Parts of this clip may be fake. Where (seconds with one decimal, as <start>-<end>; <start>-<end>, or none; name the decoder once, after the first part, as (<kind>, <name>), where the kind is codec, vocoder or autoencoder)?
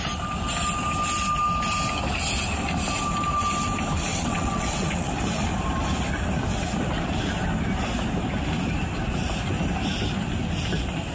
4.1-5.1 (vocoder, WaveNeXt)